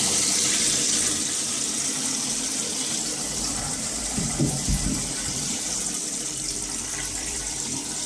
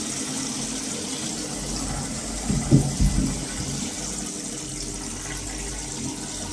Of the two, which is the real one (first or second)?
second